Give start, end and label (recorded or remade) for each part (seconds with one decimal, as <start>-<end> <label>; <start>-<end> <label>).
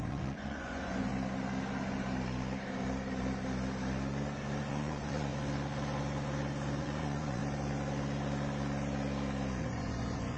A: 0.0-1.1 remade; 1.1-4.7 recorded; 4.7-5.3 remade; 5.3-6.8 recorded; 6.8-7.4 remade; 7.4-9.6 recorded; 9.6-10.4 remade